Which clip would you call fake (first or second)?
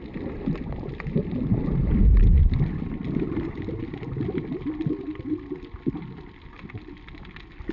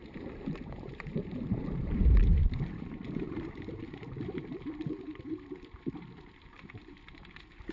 second